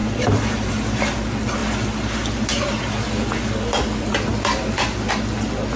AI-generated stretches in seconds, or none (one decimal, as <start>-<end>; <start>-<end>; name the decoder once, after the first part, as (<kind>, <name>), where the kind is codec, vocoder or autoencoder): 0.0-0.7 (vocoder, BigVGAN v2)

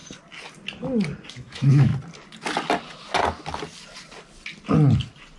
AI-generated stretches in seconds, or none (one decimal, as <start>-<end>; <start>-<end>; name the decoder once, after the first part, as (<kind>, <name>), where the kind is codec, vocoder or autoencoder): 1.3-1.9 (autoencoder, DAC-VAE)